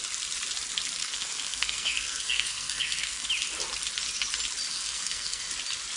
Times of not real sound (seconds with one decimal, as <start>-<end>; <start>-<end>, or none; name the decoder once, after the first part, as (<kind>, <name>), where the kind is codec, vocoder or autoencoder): 1.0-3.3 (codec, SNAC); 4.7-5.5

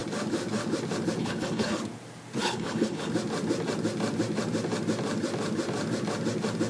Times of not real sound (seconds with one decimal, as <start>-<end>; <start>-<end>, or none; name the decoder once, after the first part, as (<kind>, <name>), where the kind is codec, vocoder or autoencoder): 1.2-1.8 (codec, HILCodec); 2.4-3.1

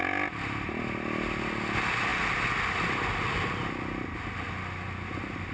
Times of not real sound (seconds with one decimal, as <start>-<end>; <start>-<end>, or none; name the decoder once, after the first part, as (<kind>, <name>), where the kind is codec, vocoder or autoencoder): none